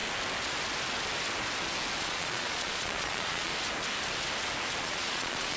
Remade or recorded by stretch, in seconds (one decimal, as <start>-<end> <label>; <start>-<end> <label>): 0.0-2.0 recorded; 2.0-3.5 remade; 3.5-4.8 recorded; 4.8-5.6 remade